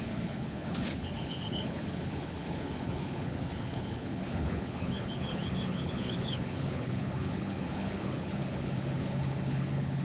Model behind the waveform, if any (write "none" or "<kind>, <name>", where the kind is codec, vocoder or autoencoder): codec, HILCodec